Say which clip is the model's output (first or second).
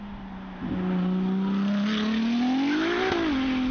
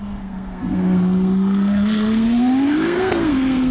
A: second